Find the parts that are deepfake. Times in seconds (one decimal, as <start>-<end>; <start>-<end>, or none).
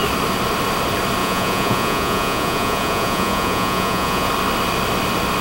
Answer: 1.2-4.3